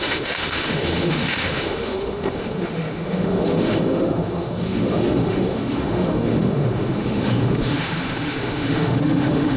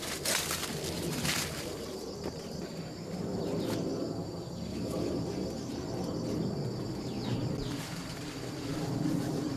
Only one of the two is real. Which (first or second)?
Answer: second